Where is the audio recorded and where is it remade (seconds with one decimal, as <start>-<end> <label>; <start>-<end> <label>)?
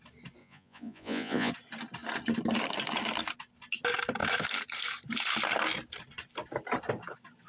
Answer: 0.0-0.4 recorded; 0.4-1.5 remade; 1.5-7.5 recorded